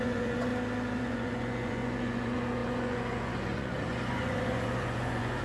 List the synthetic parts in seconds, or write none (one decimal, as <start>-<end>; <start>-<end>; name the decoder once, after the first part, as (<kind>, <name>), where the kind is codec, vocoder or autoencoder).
0.0-0.5 (vocoder, Vocos); 1.0-5.4